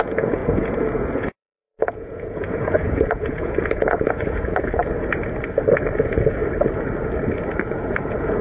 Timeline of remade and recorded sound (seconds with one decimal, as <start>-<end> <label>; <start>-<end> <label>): 0.0-4.8 remade; 4.8-6.0 recorded; 6.0-6.4 remade; 6.4-7.6 recorded; 7.6-8.4 remade